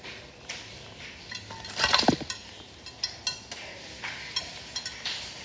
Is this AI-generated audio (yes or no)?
no